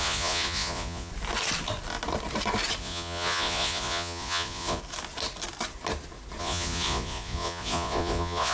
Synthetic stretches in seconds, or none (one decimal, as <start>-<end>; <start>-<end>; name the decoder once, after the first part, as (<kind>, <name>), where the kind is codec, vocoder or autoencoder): 0.0-1.1 (vocoder, Vocos); 2.8-4.8; 6.4-8.5